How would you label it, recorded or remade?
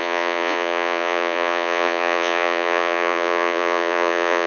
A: remade